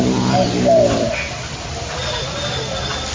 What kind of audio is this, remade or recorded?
recorded